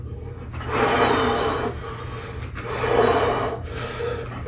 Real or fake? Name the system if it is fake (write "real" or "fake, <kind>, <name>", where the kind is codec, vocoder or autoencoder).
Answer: real